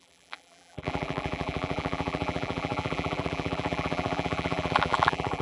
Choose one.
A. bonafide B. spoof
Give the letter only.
B